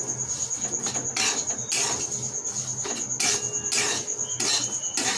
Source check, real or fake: real